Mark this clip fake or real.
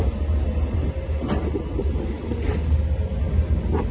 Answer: real